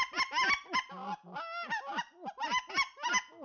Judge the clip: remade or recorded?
recorded